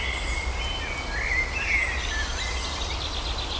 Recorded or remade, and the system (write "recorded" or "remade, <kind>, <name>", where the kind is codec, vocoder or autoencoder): recorded